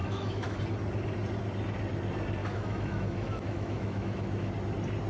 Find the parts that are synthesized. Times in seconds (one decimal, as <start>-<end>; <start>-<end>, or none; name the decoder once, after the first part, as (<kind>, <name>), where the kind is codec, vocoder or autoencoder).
0.0-0.6 (autoencoder, DAC-VAE); 2.4-4.5